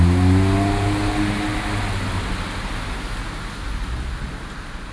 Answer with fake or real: real